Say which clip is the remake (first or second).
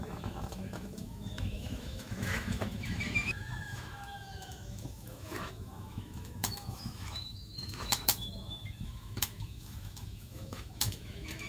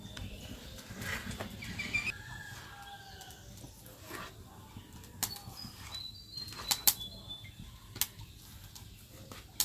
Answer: first